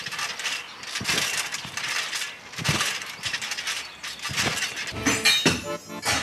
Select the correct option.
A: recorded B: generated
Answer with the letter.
A